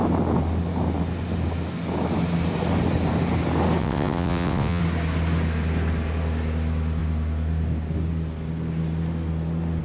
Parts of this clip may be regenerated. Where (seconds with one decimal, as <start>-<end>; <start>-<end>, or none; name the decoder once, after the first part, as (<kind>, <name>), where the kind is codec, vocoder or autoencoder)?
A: 3.8-4.8 (vocoder, WaveNeXt)